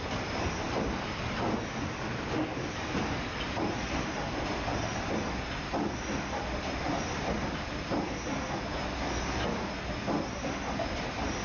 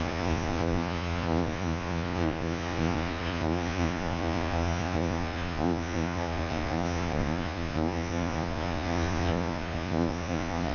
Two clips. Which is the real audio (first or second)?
first